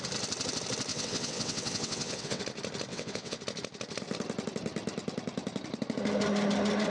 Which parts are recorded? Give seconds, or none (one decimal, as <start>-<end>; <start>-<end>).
0.0-0.9; 2.4-2.9; 3.4-6.9